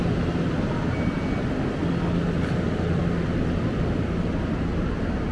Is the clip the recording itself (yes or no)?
yes